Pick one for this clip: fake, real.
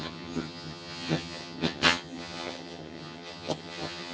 fake